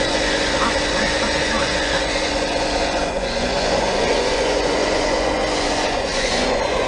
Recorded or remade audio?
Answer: remade